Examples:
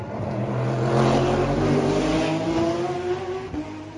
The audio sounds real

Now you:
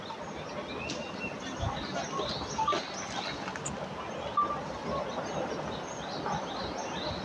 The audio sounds real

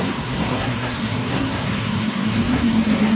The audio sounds fake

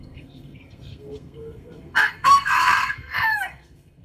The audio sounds fake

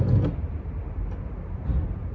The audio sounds real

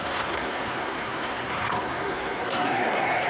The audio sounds fake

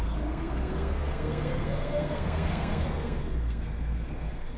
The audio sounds fake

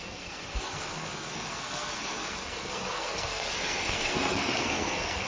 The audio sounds fake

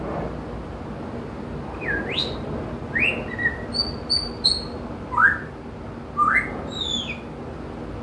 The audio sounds real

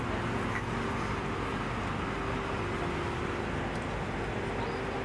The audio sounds real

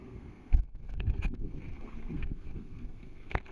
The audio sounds fake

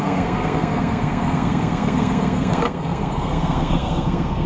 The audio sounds fake